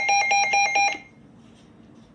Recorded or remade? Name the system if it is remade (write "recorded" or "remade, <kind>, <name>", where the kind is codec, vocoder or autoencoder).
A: recorded